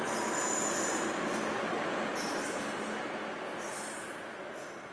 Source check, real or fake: real